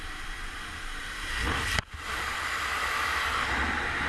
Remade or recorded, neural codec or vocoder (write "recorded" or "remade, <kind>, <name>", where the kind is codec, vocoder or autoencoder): recorded